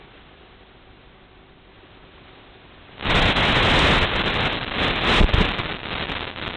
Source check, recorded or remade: recorded